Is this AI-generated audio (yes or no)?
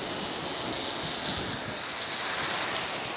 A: no